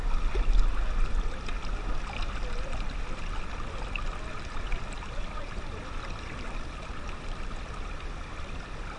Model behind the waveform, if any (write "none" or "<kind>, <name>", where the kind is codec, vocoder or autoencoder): none